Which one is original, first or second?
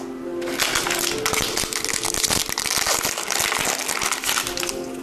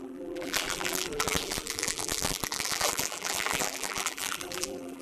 first